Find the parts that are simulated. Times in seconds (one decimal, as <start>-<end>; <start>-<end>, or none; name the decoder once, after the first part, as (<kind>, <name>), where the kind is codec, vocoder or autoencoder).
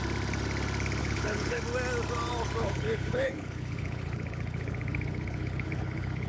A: 1.0-1.6 (codec, HILCodec); 2.6-6.3